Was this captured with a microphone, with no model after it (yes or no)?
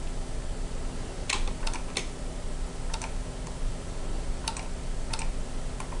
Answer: yes